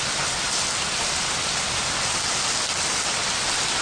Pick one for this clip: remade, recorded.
recorded